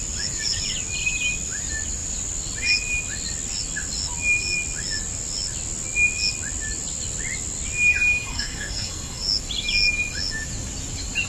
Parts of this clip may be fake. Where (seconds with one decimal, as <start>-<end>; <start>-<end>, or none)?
8.3-9.2

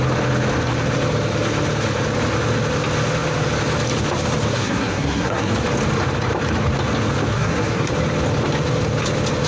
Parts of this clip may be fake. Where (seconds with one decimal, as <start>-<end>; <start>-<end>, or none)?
4.5-5.5; 7.3-7.9

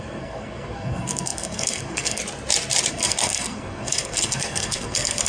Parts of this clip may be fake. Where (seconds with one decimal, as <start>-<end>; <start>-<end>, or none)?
0.0-2.2; 2.9-5.3